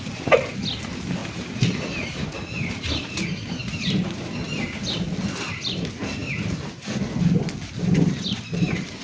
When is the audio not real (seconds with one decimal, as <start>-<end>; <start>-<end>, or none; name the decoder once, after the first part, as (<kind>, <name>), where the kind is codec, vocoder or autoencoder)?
1.2-4.5 (vocoder, BigVGAN v2)